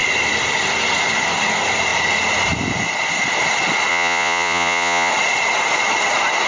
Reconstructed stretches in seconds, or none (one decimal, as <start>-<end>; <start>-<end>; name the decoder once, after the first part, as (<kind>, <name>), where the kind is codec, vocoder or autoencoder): 3.9-5.1 (vocoder, Vocos)